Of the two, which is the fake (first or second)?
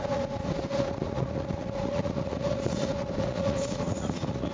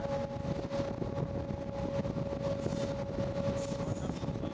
first